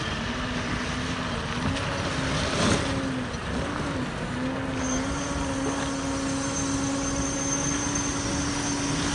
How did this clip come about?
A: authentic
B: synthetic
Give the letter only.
A